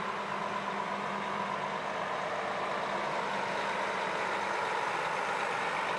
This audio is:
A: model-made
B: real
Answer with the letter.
B